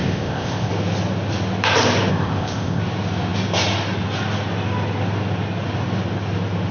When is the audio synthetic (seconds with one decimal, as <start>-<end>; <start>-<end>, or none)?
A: 0.0-0.7; 2.1-2.8